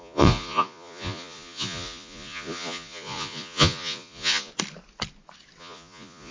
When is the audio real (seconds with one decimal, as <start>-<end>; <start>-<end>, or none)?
4.5-5.6